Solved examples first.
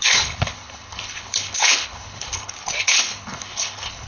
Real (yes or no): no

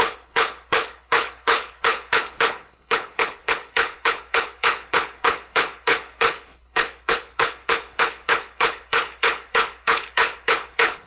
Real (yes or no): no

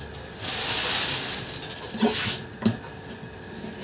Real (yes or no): yes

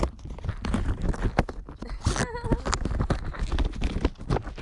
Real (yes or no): yes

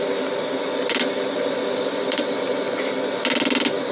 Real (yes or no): yes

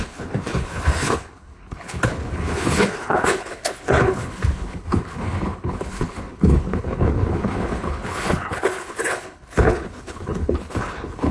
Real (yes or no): no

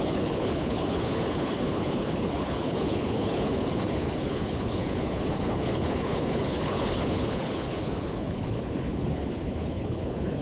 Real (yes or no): no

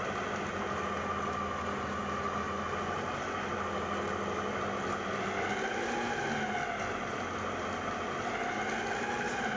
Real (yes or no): yes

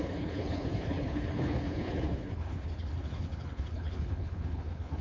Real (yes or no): no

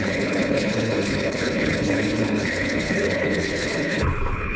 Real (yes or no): no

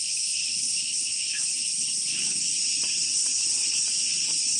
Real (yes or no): no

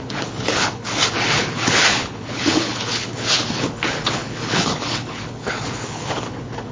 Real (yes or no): no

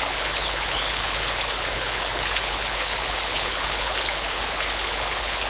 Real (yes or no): no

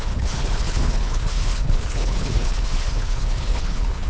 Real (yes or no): no